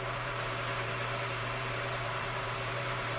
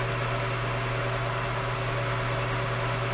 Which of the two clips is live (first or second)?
second